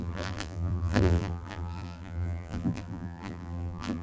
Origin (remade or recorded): remade